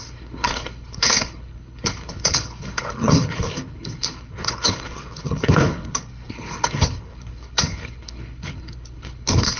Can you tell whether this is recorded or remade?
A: remade